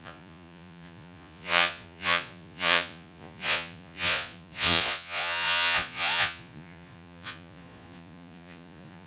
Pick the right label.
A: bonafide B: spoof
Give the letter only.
B